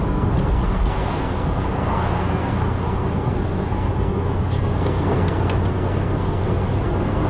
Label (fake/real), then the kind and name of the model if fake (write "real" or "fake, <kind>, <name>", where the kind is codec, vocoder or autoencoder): fake, codec, SNAC